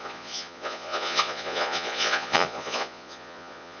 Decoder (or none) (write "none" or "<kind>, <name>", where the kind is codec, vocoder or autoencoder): vocoder, Vocos